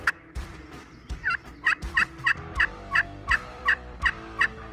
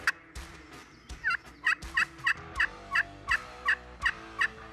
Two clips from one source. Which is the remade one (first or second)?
first